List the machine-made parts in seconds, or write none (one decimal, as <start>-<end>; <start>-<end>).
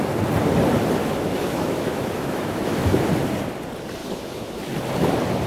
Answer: 1.0-3.1; 4.0-4.6